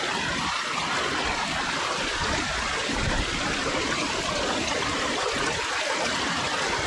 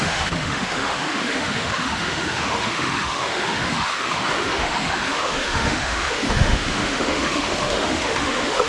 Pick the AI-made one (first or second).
second